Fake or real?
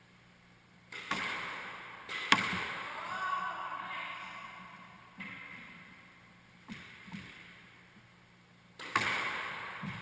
real